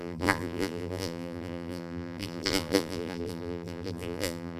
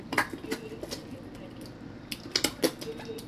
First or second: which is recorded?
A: second